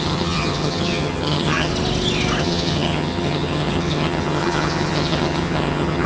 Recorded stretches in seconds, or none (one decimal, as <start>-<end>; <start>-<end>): 1.7-2.4